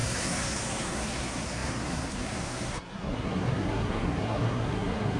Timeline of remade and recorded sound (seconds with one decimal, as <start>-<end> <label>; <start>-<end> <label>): 0.0-5.2 remade

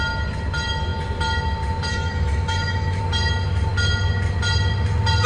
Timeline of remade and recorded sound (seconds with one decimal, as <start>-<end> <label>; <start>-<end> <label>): 0.0-1.9 recorded; 1.9-3.0 remade; 3.0-5.3 recorded

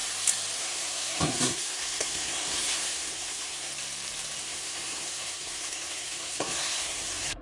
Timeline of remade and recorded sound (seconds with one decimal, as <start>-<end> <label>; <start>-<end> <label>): 0.0-0.6 recorded; 0.6-3.7 remade; 3.7-4.4 recorded; 4.4-7.4 remade

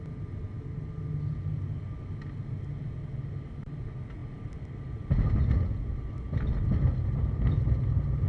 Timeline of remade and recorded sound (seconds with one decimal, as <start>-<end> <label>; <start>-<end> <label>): 0.0-8.3 recorded

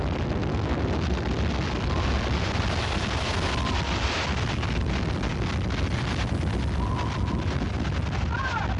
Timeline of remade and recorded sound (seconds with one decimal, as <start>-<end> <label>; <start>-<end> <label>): 0.0-8.8 recorded

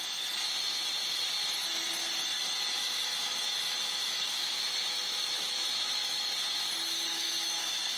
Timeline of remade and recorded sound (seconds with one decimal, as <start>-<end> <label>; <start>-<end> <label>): 0.0-2.8 recorded; 2.8-6.2 remade; 6.2-7.1 recorded; 7.1-8.0 remade